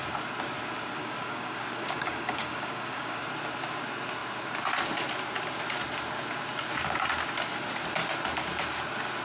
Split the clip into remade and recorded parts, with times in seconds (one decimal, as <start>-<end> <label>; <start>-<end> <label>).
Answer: 0.0-1.0 recorded; 1.0-3.2 remade; 3.2-9.2 recorded